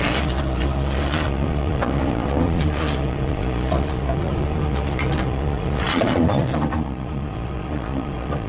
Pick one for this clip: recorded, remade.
remade